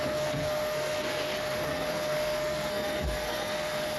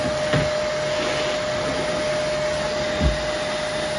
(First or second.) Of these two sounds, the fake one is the first